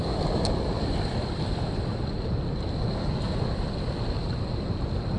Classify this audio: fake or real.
real